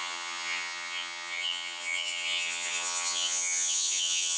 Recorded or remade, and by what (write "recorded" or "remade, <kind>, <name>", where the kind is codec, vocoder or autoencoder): remade, vocoder, HiFi-GAN